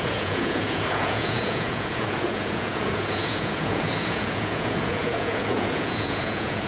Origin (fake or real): fake